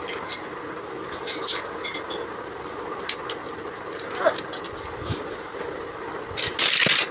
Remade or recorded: recorded